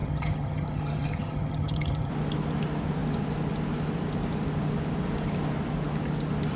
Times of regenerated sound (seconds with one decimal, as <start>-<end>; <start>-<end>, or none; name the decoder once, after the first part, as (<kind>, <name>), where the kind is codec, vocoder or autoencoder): 0.0-2.1 (vocoder, HiFi-GAN)